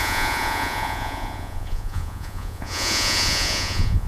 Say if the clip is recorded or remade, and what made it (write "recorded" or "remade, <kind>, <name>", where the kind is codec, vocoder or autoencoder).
remade, vocoder, Vocos